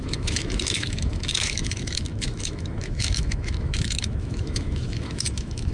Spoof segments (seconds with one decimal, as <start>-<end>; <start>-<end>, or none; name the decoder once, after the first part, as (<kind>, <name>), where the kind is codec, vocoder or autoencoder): 0.0-5.7 (autoencoder, DAC-VAE)